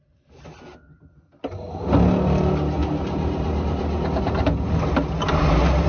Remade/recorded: recorded